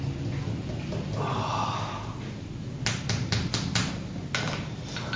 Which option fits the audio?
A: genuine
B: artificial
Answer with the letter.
A